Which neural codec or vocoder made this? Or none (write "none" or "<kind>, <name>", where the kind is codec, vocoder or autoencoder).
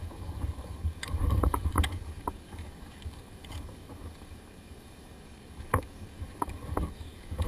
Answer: codec, DAC